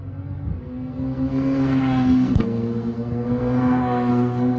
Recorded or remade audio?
remade